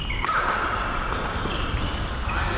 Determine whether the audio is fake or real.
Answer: real